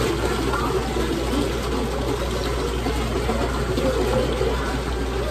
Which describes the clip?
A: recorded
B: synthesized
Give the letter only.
A